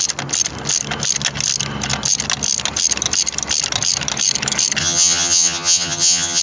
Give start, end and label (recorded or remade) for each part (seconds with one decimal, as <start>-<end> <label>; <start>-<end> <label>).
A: 0.0-4.8 recorded; 4.8-6.4 remade